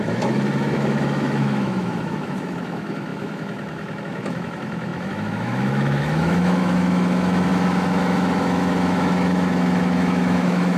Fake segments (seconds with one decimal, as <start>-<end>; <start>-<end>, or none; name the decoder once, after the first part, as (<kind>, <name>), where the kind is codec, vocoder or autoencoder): 0.0-10.8 (autoencoder, DAC-VAE)